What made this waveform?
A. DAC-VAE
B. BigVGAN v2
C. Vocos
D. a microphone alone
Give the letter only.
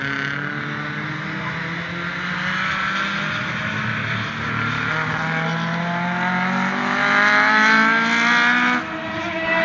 D